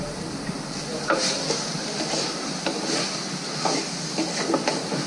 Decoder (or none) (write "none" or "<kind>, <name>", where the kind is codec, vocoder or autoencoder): none